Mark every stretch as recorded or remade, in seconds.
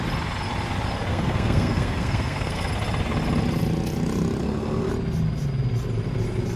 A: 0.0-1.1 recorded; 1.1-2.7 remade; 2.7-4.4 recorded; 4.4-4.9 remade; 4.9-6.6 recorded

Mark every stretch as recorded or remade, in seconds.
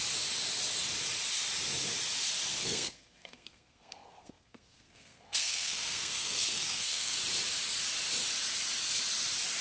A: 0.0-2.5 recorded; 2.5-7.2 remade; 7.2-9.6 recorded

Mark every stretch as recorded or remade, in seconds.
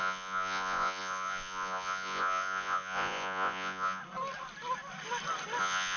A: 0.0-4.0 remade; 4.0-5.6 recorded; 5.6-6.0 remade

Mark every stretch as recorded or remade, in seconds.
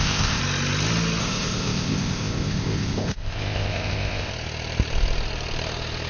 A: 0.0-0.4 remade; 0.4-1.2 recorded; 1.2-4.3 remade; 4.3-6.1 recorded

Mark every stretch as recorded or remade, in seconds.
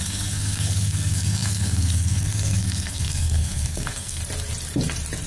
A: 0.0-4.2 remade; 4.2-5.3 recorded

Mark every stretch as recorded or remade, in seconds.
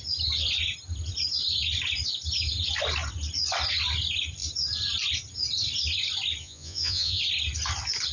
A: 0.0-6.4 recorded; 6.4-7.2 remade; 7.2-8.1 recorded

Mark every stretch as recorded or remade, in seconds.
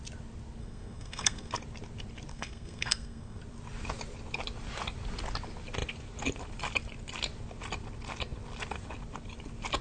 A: 0.0-0.6 recorded; 0.6-1.5 remade; 1.5-2.3 recorded; 2.3-3.4 remade; 3.4-9.8 recorded